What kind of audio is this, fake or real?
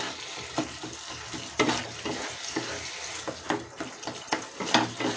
real